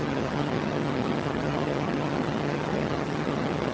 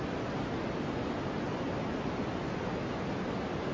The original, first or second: second